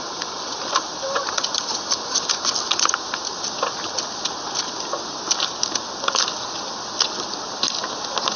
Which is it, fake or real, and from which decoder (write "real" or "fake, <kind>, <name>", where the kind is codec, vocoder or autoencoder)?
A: real